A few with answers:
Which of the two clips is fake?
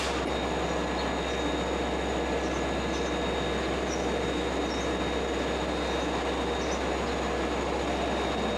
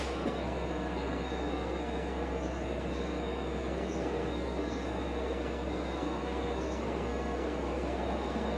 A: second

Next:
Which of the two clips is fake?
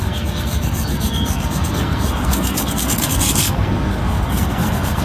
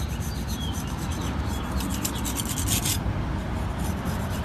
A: first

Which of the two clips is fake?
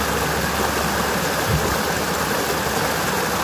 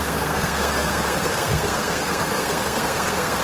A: second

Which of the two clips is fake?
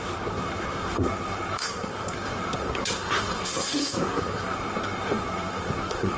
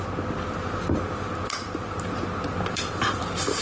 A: first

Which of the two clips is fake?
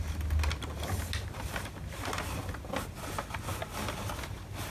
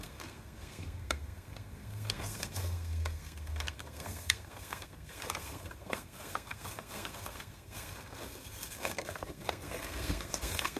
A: second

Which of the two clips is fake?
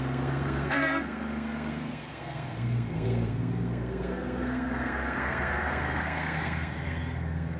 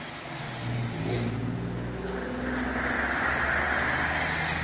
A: first